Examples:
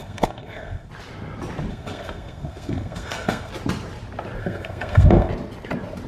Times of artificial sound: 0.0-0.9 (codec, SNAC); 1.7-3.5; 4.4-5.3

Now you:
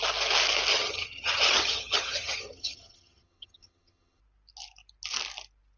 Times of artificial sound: 0.7-4.2 (vocoder, HiFi-GAN)

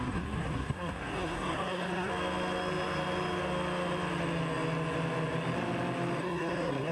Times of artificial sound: 0.0-2.1 (codec, SNAC); 6.2-6.9

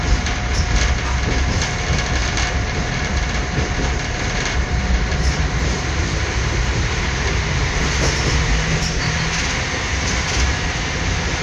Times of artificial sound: 2.2-7.2 (vocoder, BigVGAN v2)

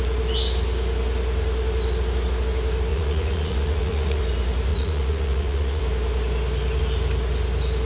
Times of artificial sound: 2.9-4.2 (vocoder, Vocos); 4.7-5.8